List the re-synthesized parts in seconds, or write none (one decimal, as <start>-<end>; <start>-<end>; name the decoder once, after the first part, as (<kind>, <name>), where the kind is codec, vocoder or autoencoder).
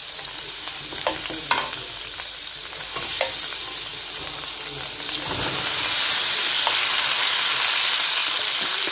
0.0-3.9 (vocoder, BigVGAN v2); 7.7-8.9